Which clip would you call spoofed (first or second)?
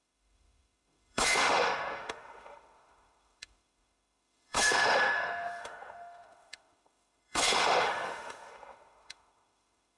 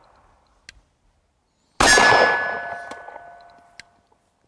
first